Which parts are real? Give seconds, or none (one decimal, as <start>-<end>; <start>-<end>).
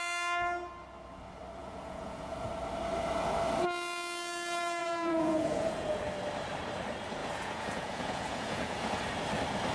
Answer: 0.0-1.6; 2.5-4.8; 6.0-7.2; 9.0-9.7